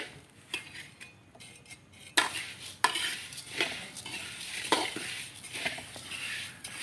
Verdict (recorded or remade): recorded